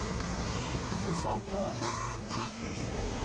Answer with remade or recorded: remade